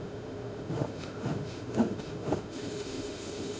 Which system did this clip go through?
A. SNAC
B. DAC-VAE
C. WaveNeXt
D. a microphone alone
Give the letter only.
B